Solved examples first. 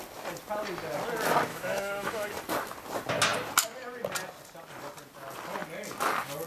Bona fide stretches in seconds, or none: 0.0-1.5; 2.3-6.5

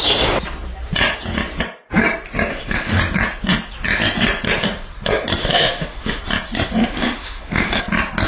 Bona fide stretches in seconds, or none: 0.0-2.5; 3.0-5.4; 6.2-6.8; 7.8-8.3

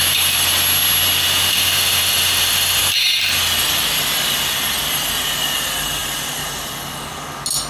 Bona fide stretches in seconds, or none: 0.0-1.5; 2.8-7.7

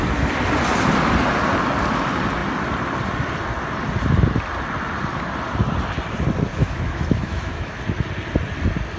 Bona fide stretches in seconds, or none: 0.0-6.5; 7.8-9.0